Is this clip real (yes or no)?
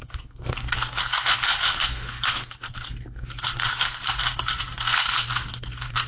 no